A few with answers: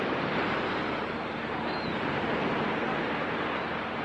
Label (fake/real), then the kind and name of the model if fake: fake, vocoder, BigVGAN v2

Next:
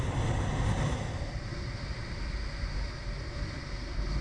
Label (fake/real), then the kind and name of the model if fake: real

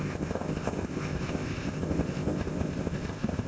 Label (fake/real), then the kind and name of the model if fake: fake, codec, ZipCodec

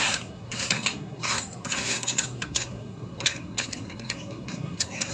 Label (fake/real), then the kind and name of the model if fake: fake, codec, SNAC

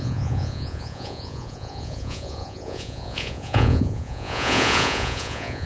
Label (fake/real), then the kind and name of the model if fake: fake, vocoder, Vocos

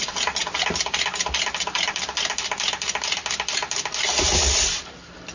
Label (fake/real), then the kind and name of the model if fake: real